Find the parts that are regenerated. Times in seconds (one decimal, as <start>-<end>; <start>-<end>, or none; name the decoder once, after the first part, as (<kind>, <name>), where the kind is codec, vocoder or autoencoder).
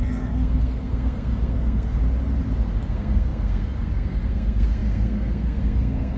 0.0-2.0 (codec, SNAC); 2.9-6.2